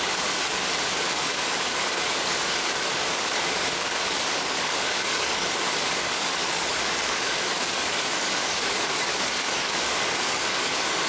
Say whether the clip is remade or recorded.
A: remade